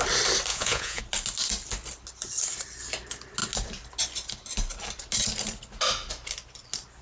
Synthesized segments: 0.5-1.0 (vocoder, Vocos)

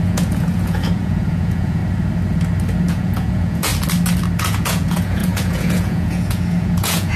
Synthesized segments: 0.0-1.8 (vocoder, Vocos); 2.9-3.7; 4.4-7.2

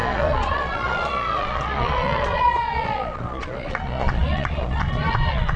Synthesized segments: 0.0-5.6 (vocoder, Vocos)

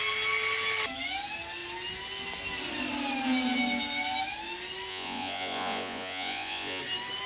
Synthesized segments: 4.9-6.8 (vocoder, Vocos)

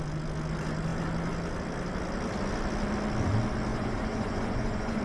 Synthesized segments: 3.7-5.0 (vocoder, Vocos)

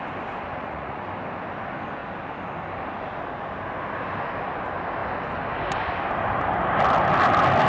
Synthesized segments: 0.5-1.0 (vocoder, Vocos)

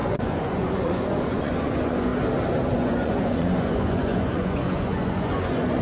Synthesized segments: 0.0-2.1 (vocoder, Vocos); 2.7-5.8